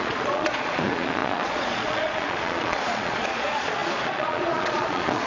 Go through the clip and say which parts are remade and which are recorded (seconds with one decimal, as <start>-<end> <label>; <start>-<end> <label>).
0.0-5.3 remade